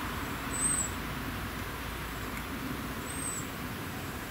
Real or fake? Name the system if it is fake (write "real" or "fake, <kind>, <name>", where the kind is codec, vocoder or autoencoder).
fake, vocoder, BigVGAN v2